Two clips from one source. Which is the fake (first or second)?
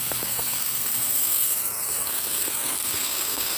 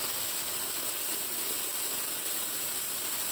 first